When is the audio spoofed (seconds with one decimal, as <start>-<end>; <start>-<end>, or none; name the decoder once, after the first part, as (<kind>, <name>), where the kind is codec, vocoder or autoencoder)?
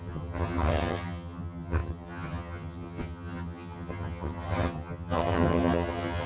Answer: 0.0-6.3 (vocoder, HiFi-GAN)